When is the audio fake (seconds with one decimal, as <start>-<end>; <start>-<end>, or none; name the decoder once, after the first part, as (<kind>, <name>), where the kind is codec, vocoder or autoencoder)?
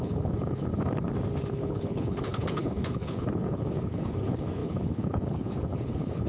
0.0-0.7 (codec, HILCodec); 1.5-6.3